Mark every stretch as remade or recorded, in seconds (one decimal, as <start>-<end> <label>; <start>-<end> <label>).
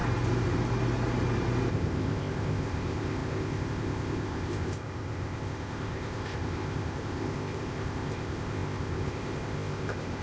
0.0-1.7 recorded; 1.7-10.2 remade